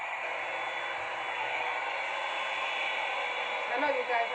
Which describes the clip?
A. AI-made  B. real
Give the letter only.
B